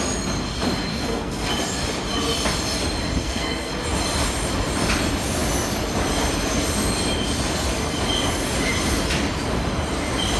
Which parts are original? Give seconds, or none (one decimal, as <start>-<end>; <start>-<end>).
0.0-0.9; 1.5-3.2; 3.7-10.4